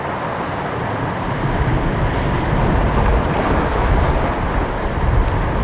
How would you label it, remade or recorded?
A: recorded